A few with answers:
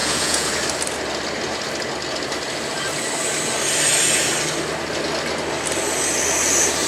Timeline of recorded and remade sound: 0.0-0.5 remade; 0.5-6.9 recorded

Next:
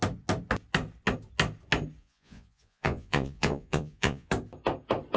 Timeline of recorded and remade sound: 0.0-2.0 recorded; 2.0-4.3 remade; 4.3-5.2 recorded

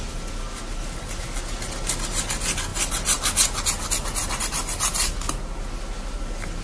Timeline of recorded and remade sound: 0.0-6.6 recorded